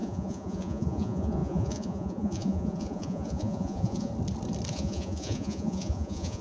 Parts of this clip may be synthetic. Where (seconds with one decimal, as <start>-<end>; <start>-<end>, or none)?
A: 0.0-4.1; 4.7-6.4